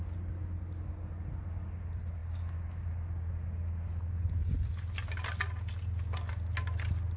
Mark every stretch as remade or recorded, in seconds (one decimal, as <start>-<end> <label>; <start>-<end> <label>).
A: 0.0-7.2 recorded